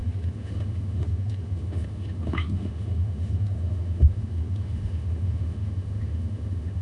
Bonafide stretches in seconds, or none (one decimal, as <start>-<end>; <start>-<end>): none